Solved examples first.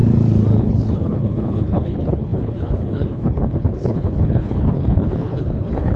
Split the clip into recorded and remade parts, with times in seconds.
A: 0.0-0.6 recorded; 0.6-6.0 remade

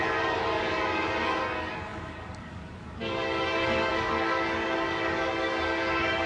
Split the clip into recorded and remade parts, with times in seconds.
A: 0.0-6.3 remade

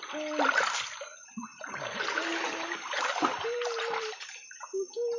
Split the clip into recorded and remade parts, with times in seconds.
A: 0.0-1.5 recorded; 1.5-4.6 remade; 4.6-5.2 recorded

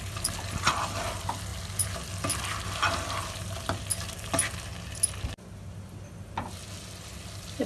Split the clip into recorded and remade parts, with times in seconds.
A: 0.0-7.7 recorded

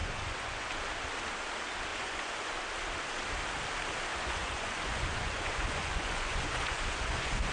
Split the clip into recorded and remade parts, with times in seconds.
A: 0.0-0.7 remade; 0.7-1.9 recorded; 1.9-2.6 remade; 2.6-4.1 recorded; 4.1-7.5 remade

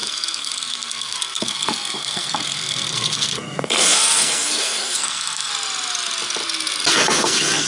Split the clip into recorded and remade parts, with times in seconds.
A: 0.0-5.5 remade; 5.5-6.9 recorded; 6.9-7.7 remade

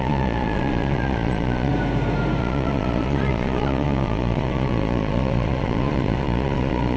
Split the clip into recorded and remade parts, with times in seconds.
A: 0.0-1.7 remade; 1.7-2.4 recorded; 2.4-7.0 remade